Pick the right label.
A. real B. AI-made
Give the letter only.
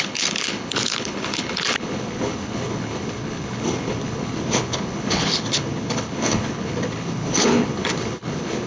B